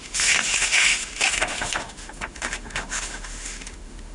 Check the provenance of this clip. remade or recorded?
remade